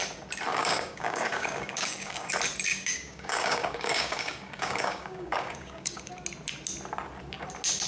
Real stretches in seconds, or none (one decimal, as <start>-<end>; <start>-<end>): 0.0-0.5; 2.3-2.7; 6.1-7.9